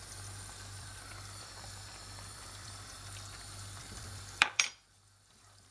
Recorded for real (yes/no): no